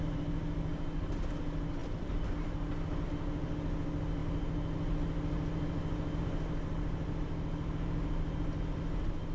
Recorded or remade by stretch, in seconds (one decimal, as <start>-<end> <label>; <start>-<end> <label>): 0.0-9.3 recorded